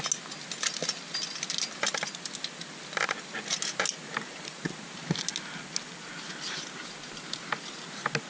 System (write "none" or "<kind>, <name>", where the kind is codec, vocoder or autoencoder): none